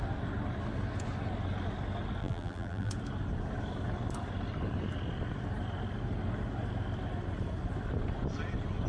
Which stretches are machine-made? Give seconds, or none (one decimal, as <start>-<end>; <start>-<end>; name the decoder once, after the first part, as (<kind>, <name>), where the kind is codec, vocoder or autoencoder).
2.2-2.9 (vocoder, BigVGAN v2)